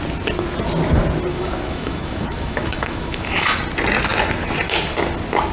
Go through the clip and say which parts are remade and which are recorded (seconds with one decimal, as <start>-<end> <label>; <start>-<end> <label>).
0.0-1.3 recorded; 1.3-3.6 remade; 3.6-5.5 recorded